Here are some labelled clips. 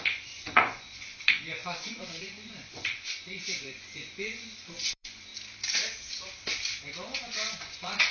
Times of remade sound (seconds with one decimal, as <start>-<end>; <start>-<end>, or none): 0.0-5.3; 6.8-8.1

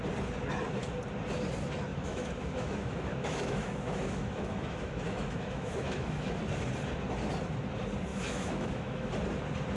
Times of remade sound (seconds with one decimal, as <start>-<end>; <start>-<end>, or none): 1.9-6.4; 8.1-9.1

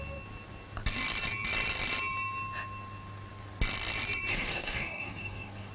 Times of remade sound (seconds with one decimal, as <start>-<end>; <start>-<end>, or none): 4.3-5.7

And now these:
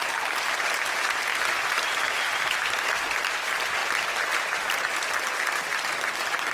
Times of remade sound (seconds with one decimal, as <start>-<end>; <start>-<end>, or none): none

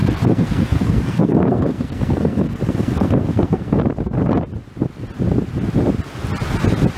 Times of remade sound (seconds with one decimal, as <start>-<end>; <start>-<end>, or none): 0.0-3.8

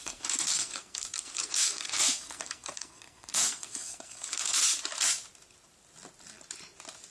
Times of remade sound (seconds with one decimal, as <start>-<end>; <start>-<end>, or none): 0.0-4.6